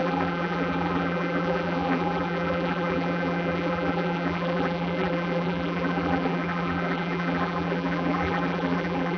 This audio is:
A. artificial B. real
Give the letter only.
A